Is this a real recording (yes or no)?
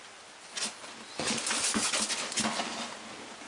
yes